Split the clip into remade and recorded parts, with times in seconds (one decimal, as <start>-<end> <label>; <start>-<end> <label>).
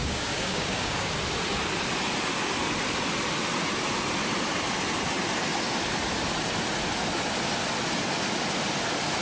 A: 0.0-1.1 remade; 1.1-9.2 recorded